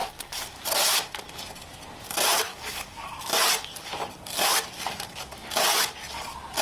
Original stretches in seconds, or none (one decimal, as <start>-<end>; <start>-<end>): 0.6-2.5; 3.2-6.6